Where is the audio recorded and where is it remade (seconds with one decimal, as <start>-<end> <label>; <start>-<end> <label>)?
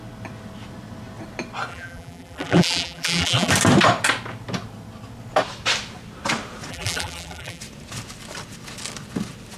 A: 0.0-1.7 recorded; 1.7-3.5 remade; 3.5-6.7 recorded; 6.7-7.6 remade; 7.6-9.6 recorded